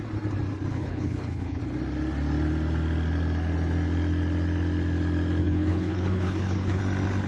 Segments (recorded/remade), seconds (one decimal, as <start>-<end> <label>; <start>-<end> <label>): 0.0-0.7 recorded; 0.7-1.6 remade; 1.6-5.4 recorded; 5.4-6.8 remade; 6.8-7.3 recorded